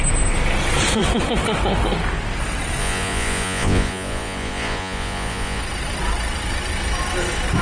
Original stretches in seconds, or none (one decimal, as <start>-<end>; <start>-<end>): 0.0-2.8; 5.6-7.6